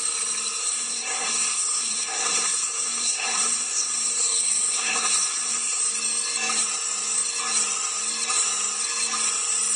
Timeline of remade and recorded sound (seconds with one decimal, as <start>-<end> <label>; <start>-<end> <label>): 0.0-0.6 recorded; 0.6-5.8 remade; 5.8-9.8 recorded